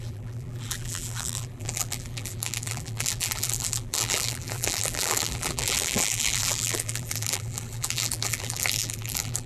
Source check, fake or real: fake